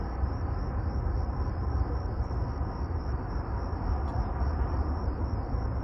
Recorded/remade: remade